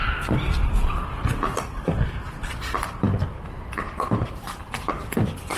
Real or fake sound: fake